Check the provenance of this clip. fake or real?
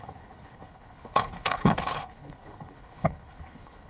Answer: fake